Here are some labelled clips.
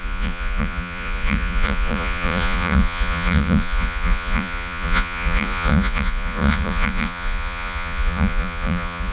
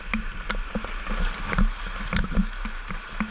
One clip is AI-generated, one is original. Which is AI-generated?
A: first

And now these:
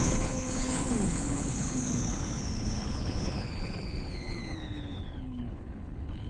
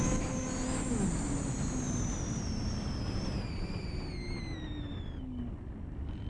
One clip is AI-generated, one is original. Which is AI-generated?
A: first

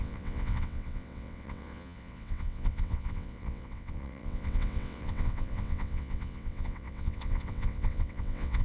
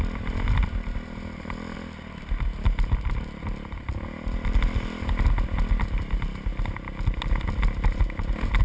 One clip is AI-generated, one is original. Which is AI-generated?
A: first